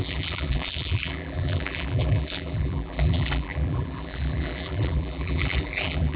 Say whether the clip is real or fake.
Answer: fake